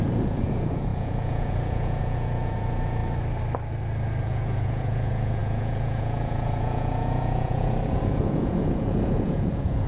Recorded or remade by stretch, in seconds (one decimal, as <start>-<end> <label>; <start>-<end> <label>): 0.0-3.0 remade; 3.0-4.2 recorded; 4.2-9.9 remade